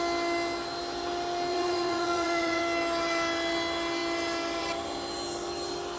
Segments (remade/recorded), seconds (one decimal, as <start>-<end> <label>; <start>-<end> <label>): 0.0-1.5 recorded; 1.5-2.6 remade; 2.6-6.0 recorded